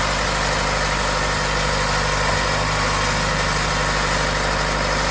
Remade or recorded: recorded